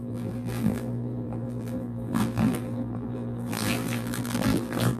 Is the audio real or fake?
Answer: fake